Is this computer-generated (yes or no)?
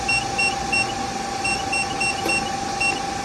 no